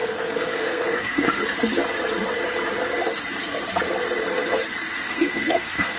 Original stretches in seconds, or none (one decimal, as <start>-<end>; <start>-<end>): 1.4-5.0